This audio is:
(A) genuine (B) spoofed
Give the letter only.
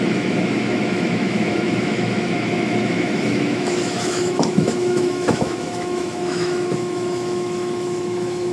B